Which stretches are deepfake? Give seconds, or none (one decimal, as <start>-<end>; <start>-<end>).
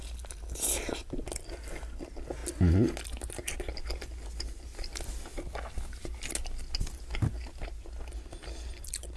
none